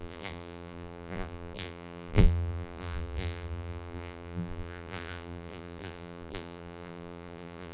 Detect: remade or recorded remade